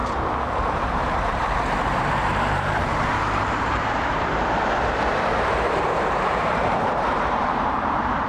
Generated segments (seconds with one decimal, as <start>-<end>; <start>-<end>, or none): 0.6-8.3